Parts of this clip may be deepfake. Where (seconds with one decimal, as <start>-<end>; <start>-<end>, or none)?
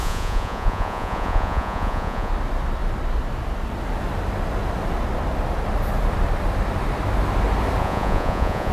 0.0-2.3; 7.8-8.7